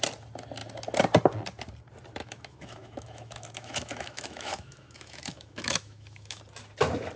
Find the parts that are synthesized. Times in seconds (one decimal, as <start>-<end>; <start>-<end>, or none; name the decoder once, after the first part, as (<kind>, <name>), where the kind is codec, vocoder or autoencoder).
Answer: 2.2-6.4 (autoencoder, DAC-VAE)